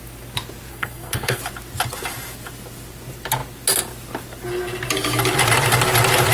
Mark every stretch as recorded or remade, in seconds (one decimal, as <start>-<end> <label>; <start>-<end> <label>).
0.0-0.7 recorded; 0.7-1.4 remade; 1.4-6.3 recorded